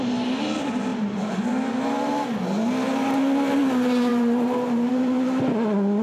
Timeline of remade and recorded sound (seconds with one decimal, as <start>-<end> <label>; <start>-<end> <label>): 0.0-4.1 recorded; 4.1-4.9 remade; 4.9-6.0 recorded